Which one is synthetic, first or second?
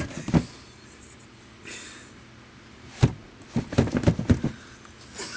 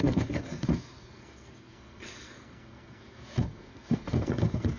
second